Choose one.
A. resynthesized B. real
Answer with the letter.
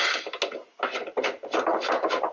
B